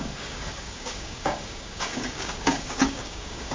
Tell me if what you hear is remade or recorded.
remade